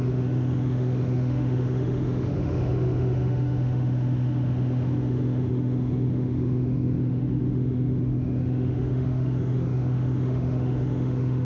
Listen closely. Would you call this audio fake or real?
fake